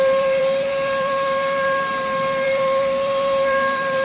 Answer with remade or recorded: remade